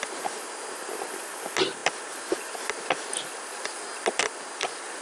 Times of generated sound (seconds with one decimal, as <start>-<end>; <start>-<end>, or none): none